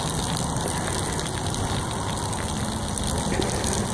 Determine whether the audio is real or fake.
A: real